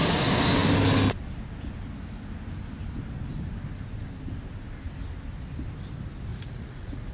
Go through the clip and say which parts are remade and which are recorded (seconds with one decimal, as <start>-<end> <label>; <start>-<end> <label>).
0.0-6.3 recorded; 6.3-7.1 remade

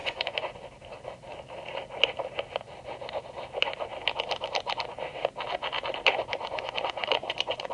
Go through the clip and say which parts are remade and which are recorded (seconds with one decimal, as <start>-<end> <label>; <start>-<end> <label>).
0.0-0.6 remade; 0.6-6.4 recorded; 6.4-7.7 remade

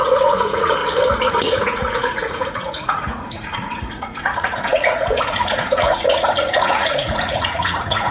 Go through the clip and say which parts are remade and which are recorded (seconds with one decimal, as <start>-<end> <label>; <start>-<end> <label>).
0.0-0.8 remade; 0.8-1.3 recorded; 1.3-8.1 remade

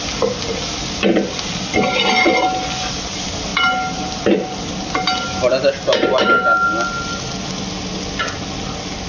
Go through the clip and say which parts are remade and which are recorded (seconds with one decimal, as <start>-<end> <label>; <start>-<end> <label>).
0.0-9.1 recorded

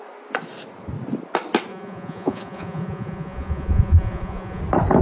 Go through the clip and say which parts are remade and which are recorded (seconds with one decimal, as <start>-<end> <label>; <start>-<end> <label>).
0.0-1.7 recorded; 1.7-4.6 remade; 4.6-5.0 recorded

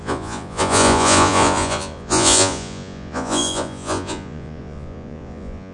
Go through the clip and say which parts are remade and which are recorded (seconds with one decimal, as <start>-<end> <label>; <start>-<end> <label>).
0.0-5.7 remade